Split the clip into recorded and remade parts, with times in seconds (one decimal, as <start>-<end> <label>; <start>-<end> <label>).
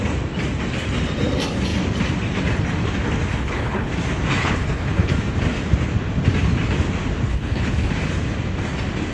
0.0-3.3 recorded; 3.3-3.9 remade; 3.9-4.4 recorded; 4.4-5.1 remade; 5.1-7.3 recorded; 7.3-7.9 remade; 7.9-9.1 recorded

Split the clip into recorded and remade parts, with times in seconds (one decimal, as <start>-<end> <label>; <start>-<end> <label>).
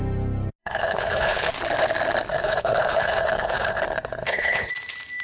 0.0-0.6 recorded; 0.6-1.5 remade; 1.5-2.3 recorded; 2.3-3.8 remade; 3.8-4.2 recorded; 4.2-4.7 remade; 4.7-5.2 recorded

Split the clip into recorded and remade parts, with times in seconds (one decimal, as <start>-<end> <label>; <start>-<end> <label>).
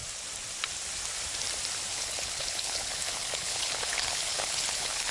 0.0-1.9 recorded; 1.9-5.1 remade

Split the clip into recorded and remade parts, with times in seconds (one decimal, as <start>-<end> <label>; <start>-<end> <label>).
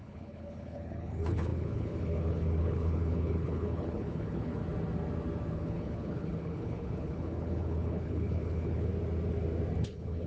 0.0-4.6 remade; 4.6-5.5 recorded; 5.5-8.9 remade; 8.9-9.8 recorded; 9.8-10.3 remade